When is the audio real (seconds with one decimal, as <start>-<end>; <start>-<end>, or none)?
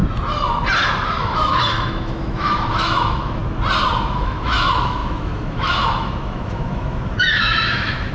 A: 0.0-1.2; 3.4-4.1